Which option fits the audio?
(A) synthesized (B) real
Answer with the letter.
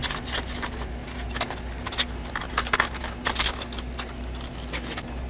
B